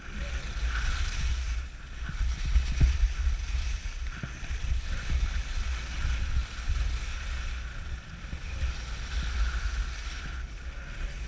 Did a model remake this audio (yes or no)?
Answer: no